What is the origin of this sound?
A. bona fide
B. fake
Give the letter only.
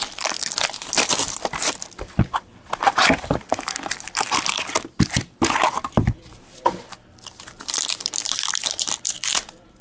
B